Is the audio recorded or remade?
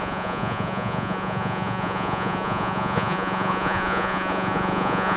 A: remade